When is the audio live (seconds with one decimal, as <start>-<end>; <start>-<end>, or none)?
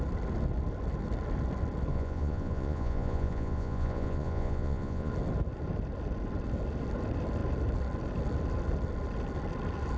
0.0-1.9; 5.1-10.0